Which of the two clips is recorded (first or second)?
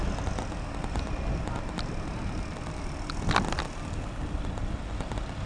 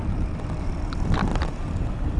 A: first